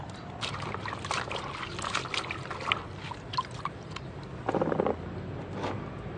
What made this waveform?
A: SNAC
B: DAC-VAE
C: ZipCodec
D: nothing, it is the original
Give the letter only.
D